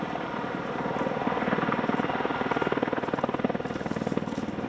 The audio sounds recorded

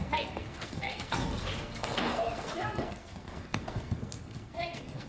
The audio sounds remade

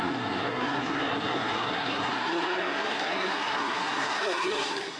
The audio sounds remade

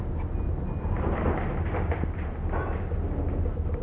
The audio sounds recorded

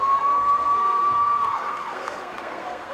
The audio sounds remade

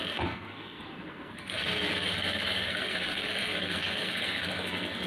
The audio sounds remade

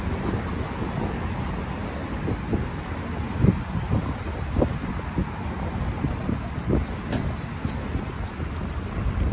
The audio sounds recorded